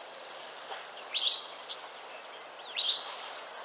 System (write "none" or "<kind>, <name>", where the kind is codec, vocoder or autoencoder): none